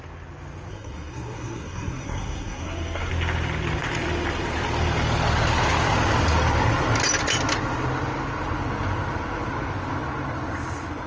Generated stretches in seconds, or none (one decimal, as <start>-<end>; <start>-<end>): 0.7-3.1